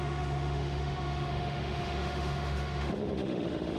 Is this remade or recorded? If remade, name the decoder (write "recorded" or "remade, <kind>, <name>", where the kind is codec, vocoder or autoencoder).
remade, autoencoder, DAC-VAE